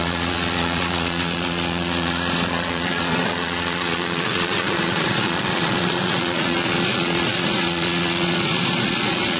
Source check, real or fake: fake